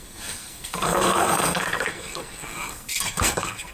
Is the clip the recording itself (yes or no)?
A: no